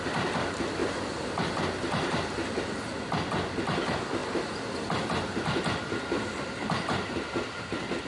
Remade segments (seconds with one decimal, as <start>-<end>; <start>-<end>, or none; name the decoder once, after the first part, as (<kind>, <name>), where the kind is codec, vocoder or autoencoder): none